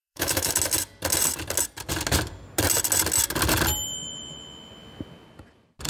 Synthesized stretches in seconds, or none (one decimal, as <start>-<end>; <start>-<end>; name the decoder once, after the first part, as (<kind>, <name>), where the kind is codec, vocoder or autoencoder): 0.0-0.5 (autoencoder, DAC-VAE)